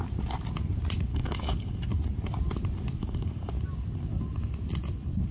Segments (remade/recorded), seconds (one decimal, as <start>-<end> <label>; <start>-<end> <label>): 0.0-1.1 recorded; 1.1-1.8 remade; 1.8-3.0 recorded; 3.0-3.5 remade; 3.5-5.3 recorded